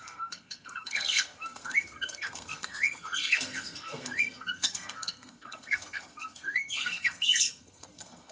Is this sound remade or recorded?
remade